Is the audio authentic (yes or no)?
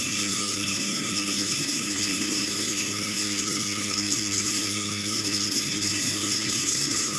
no